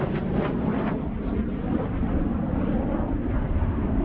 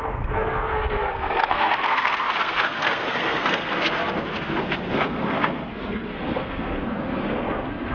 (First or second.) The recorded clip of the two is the first